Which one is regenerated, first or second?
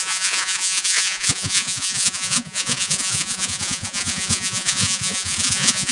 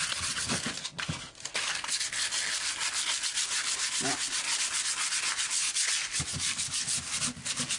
first